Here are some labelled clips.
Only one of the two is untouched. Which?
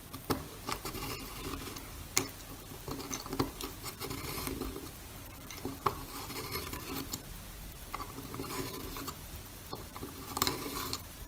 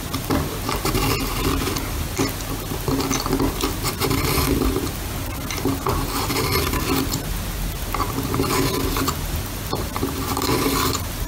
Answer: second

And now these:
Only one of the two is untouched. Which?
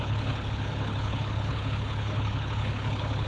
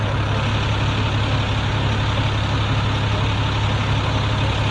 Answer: second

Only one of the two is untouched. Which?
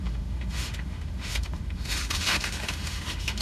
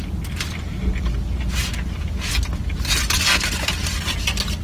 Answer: second